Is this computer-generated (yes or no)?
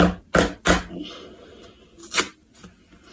no